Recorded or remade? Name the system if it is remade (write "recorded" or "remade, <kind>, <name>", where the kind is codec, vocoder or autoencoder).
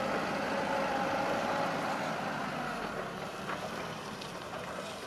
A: remade, vocoder, BigVGAN v2